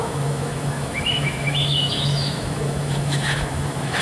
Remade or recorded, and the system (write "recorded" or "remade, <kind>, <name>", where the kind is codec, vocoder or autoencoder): remade, autoencoder, DAC-VAE